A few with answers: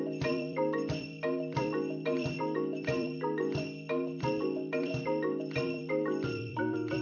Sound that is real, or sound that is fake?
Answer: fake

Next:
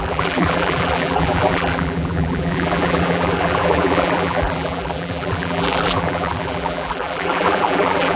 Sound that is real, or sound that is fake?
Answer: fake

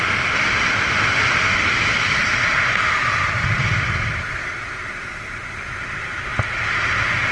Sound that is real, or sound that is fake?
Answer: fake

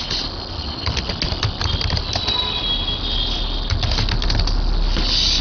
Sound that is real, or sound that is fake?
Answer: real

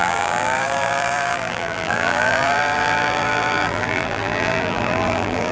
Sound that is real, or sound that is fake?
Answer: fake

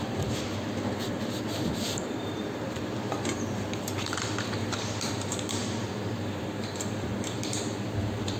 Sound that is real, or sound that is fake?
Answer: fake